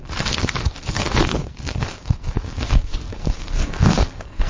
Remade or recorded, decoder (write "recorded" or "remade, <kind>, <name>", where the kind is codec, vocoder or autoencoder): remade, codec, SNAC